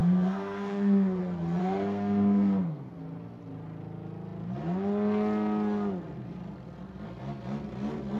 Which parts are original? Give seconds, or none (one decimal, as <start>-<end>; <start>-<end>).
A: 1.2-1.6; 3.0-8.2